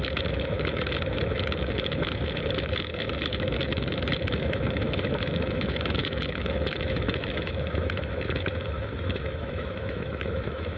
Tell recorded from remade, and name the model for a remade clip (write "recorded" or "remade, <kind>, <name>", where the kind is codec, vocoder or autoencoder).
remade, autoencoder, DAC-VAE